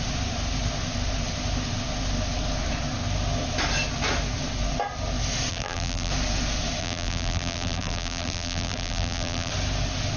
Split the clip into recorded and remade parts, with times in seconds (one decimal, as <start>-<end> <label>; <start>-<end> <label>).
0.0-5.5 recorded; 5.5-6.1 remade; 6.1-6.8 recorded; 6.8-9.5 remade; 9.5-10.2 recorded